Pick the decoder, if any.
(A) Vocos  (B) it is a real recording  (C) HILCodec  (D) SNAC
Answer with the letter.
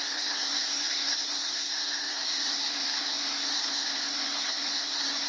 D